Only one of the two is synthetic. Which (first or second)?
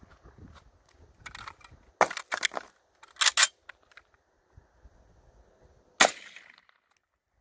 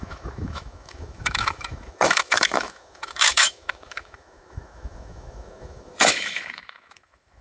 second